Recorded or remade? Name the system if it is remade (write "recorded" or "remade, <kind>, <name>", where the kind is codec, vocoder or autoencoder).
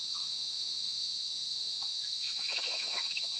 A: remade, autoencoder, DAC-VAE